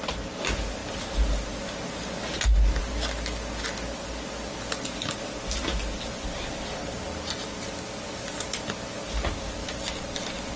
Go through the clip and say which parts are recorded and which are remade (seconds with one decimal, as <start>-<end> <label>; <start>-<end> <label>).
0.0-10.6 recorded